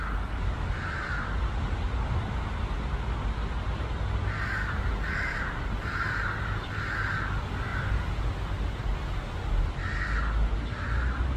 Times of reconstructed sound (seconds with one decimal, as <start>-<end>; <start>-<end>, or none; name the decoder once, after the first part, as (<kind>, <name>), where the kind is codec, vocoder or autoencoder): none